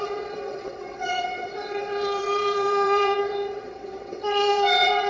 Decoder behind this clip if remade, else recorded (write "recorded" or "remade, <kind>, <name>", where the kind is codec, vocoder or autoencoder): remade, vocoder, WaveNeXt